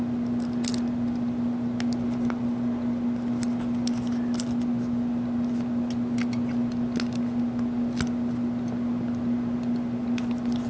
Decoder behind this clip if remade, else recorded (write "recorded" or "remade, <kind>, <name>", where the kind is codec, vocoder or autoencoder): recorded